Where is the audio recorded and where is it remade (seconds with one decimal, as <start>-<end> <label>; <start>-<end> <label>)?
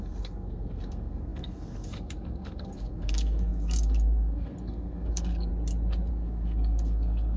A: 0.0-5.5 remade; 5.5-6.1 recorded; 6.1-7.4 remade